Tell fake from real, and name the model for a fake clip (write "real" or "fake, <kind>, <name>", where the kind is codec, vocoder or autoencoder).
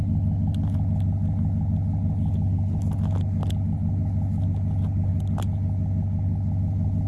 real